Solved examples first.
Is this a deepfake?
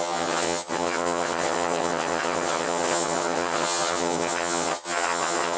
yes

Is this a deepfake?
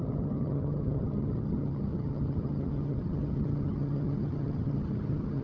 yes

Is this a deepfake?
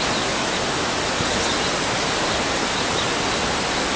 no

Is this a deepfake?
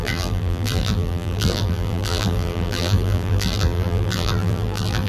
yes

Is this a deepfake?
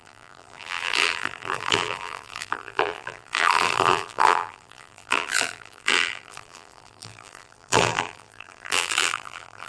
yes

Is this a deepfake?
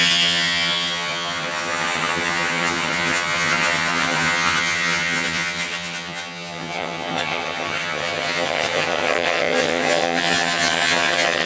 yes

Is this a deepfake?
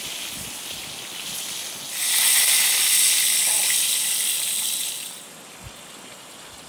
no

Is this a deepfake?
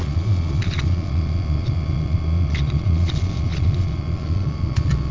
yes